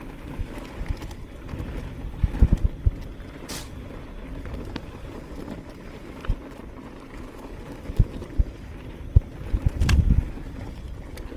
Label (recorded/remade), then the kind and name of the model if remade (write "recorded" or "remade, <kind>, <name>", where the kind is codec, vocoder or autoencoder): recorded